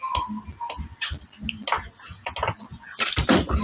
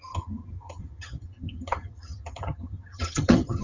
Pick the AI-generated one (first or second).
second